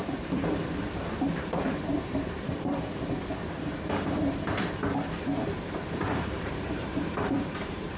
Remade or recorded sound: remade